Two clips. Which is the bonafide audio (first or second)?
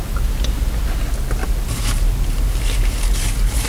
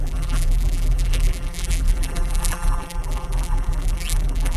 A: first